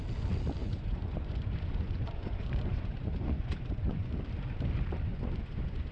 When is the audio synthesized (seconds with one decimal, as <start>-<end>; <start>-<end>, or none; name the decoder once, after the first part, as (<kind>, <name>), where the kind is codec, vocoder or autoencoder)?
0.6-4.1 (vocoder, Vocos); 5.1-5.9